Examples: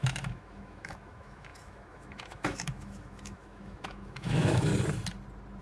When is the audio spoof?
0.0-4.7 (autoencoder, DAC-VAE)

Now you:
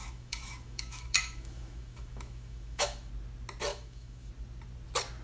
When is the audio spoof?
0.0-3.1 (autoencoder, DAC-VAE); 3.7-4.3

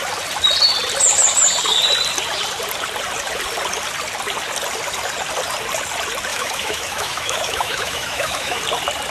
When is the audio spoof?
6.3-8.6 (autoencoder, DAC-VAE)

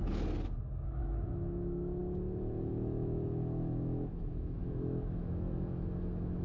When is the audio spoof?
1.0-2.0 (autoencoder, DAC-VAE); 2.6-6.4

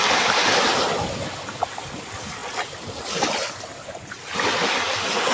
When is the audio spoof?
none

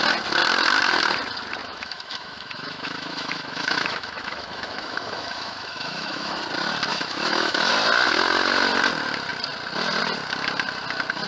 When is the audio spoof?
1.6-6.4 (autoencoder, DAC-VAE); 6.9-7.7

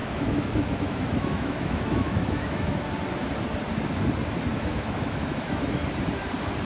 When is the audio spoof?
0.0-2.9 (autoencoder, DAC-VAE); 4.5-5.8

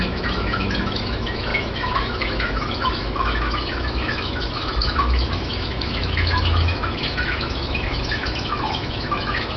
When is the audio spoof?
0.0-9.6 (autoencoder, DAC-VAE)